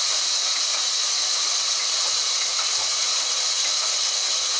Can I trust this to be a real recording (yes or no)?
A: no